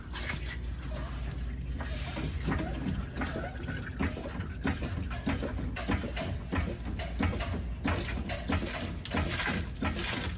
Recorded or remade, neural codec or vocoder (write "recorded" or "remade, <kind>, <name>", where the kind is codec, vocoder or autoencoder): recorded